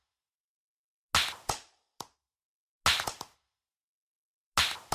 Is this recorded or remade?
recorded